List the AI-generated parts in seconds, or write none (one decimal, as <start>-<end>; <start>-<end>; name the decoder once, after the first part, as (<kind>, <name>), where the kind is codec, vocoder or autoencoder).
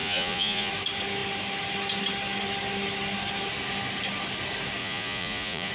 0.0-0.7 (vocoder, Vocos); 4.8-5.7